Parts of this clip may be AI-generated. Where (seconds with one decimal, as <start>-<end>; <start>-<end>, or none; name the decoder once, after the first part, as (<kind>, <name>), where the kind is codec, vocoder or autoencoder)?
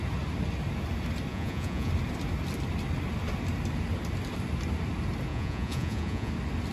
1.3-1.9 (vocoder, Vocos); 5.3-6.3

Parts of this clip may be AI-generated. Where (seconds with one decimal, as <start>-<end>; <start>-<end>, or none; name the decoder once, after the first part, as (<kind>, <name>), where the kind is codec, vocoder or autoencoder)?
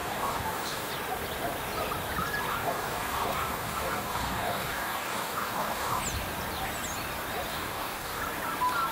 0.0-0.9 (codec, DAC); 2.5-6.0; 7.5-8.2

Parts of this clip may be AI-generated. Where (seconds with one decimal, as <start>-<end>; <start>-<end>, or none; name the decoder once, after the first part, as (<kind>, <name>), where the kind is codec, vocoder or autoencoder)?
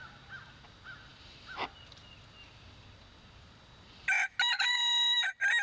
none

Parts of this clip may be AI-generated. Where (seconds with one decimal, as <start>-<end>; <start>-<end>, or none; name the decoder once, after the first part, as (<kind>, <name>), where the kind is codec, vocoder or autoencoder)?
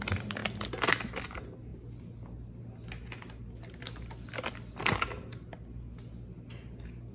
none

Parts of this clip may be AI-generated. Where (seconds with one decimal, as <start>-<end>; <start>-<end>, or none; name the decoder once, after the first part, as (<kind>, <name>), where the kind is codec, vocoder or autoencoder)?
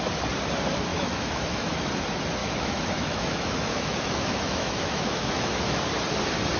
0.9-1.9 (autoencoder, DAC-VAE); 2.4-5.8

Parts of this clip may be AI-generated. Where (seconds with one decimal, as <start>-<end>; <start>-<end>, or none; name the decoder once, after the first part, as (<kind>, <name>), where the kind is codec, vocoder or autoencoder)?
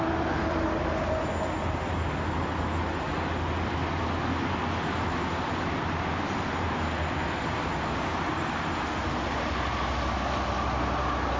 none